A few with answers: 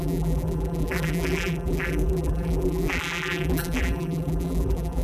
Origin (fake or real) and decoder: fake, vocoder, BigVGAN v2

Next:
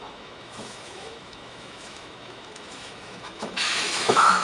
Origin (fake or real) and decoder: fake, autoencoder, DAC-VAE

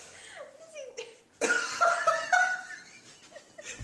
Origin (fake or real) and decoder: real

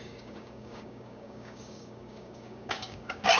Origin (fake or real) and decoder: fake, codec, DAC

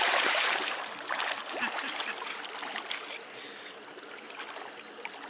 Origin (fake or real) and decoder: real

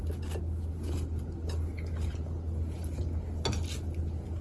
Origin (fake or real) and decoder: real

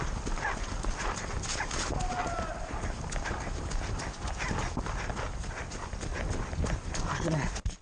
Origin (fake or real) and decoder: real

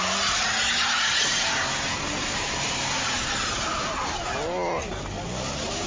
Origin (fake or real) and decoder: real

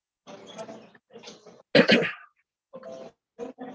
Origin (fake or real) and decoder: real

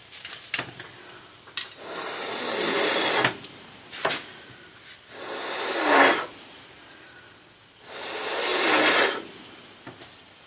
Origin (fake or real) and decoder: real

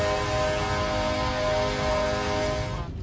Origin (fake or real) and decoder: real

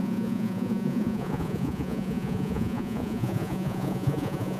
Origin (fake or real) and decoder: fake, vocoder, Vocos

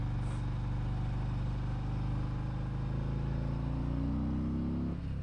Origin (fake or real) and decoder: real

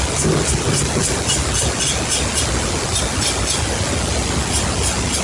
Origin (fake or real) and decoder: real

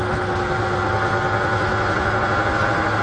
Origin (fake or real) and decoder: real